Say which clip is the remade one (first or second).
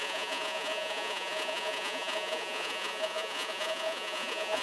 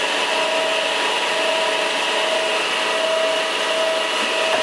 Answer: first